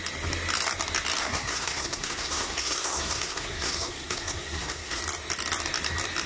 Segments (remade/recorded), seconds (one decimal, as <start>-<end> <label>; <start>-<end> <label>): 0.0-1.2 recorded; 1.2-5.0 remade; 5.0-6.3 recorded